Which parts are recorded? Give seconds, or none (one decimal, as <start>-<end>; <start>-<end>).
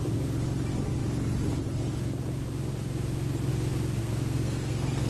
0.0-4.0